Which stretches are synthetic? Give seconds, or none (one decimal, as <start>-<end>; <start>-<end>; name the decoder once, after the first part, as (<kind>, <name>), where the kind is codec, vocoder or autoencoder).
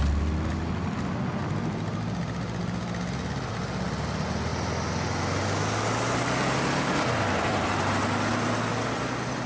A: none